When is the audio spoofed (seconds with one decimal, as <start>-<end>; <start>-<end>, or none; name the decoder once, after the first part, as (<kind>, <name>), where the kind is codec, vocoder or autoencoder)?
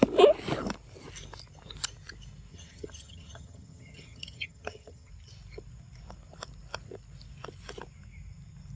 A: 2.5-5.1 (vocoder, HiFi-GAN)